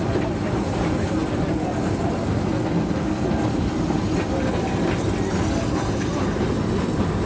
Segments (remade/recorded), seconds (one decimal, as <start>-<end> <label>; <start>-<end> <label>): 0.0-7.3 recorded